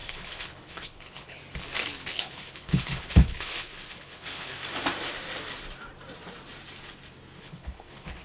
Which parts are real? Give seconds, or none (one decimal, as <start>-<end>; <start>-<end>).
1.4-2.1; 4.6-7.4